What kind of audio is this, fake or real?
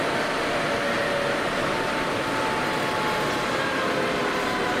real